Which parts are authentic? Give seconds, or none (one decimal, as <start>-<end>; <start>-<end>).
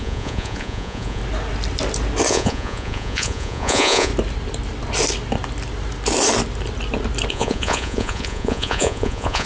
1.2-2.3; 4.1-7.3